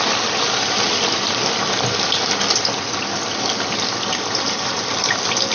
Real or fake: real